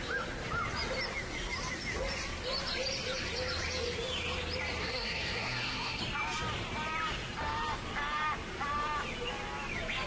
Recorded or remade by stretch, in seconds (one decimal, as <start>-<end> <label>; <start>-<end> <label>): 0.0-4.8 recorded; 4.8-6.0 remade; 6.0-10.1 recorded